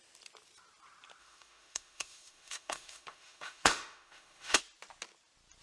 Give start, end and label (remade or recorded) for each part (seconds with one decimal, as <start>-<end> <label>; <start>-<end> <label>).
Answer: 0.0-1.2 recorded; 1.2-4.6 remade; 4.6-5.6 recorded